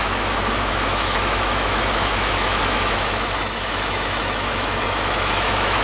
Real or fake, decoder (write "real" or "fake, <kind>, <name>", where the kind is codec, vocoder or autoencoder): fake, autoencoder, DAC-VAE